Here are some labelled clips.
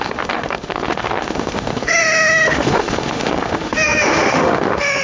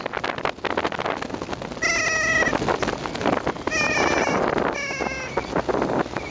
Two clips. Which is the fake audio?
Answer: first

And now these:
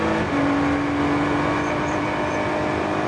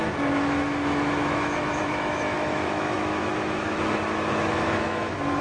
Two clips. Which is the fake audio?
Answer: second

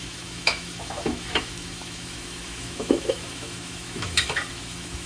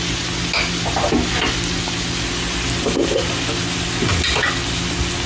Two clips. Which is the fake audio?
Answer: first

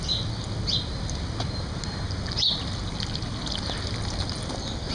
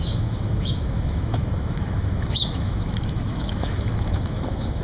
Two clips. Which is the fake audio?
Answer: second